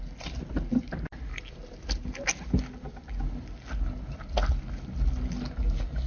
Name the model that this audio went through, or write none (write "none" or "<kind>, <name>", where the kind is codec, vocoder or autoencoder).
none